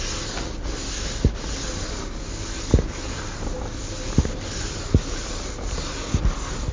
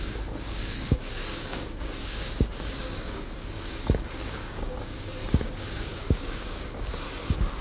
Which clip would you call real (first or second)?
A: first